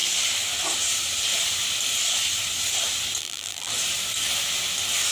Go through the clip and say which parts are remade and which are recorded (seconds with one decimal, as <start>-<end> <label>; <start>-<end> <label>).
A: 0.0-3.2 recorded; 3.2-3.7 remade; 3.7-5.1 recorded